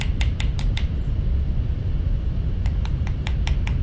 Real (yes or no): yes